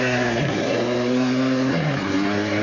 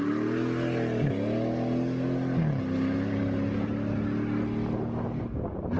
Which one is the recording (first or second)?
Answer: second